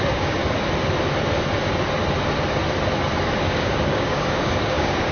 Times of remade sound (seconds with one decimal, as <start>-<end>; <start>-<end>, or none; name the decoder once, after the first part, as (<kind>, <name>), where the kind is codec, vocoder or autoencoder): 0.0-0.4 (codec, DAC); 3.4-5.1